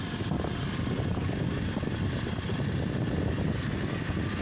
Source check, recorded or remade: recorded